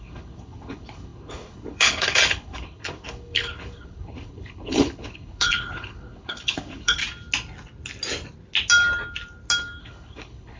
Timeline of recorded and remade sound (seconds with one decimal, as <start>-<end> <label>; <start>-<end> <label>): 0.0-7.0 remade; 7.0-9.8 recorded; 9.8-10.6 remade